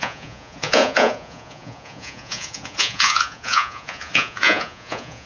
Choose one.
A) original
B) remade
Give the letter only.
B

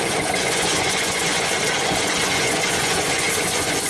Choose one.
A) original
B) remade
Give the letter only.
B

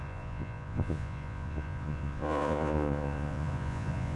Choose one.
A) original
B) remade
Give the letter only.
B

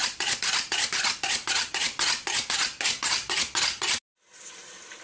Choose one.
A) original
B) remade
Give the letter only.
A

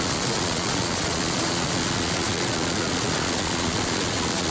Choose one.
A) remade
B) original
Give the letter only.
A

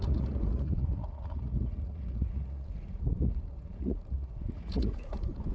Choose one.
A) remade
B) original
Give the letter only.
A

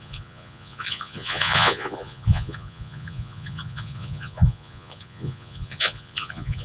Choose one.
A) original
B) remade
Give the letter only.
B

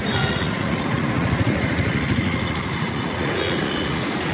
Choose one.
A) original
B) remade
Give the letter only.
B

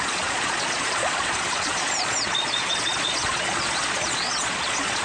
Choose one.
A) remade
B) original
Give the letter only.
A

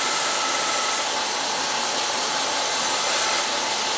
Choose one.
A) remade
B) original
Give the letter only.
B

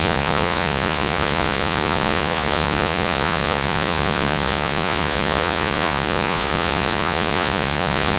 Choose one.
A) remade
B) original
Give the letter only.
A